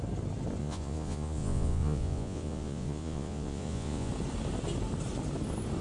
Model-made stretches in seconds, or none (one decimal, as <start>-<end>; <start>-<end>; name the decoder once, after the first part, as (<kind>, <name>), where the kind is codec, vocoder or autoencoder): 0.6-4.1 (vocoder, Vocos)